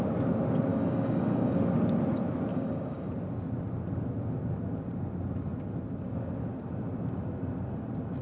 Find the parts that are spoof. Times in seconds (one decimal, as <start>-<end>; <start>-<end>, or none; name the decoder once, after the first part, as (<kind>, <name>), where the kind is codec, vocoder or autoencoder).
0.7-1.6 (codec, DAC); 2.5-3.1